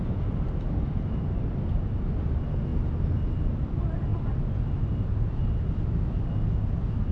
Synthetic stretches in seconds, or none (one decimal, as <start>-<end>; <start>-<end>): none